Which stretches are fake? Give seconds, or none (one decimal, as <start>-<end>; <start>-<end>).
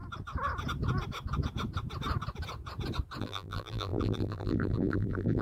3.2-5.4